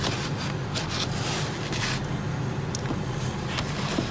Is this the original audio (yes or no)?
yes